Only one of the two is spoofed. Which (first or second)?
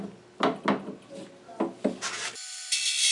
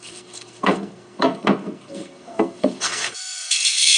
second